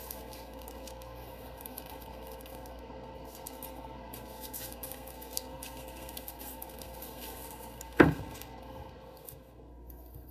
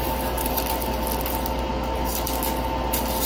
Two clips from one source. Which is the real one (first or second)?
second